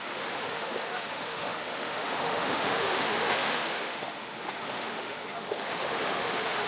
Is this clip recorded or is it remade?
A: remade